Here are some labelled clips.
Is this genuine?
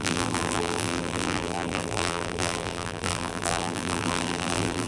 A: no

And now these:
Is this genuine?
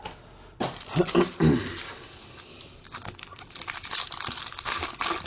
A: yes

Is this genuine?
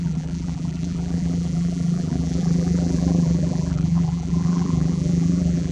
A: no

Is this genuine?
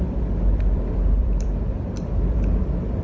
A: no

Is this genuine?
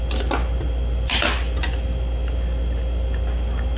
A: yes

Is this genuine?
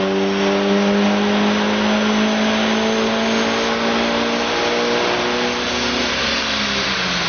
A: yes